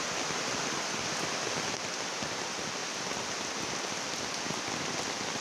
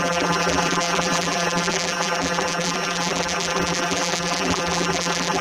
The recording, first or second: first